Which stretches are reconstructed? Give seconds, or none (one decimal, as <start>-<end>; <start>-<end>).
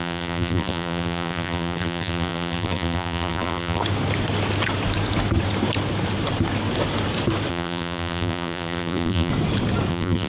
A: 0.0-3.8; 7.5-9.3; 9.9-10.3